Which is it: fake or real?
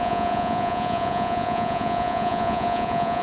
fake